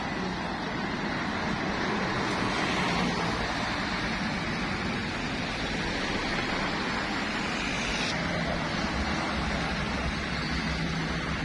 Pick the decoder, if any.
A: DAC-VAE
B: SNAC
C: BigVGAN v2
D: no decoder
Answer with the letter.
D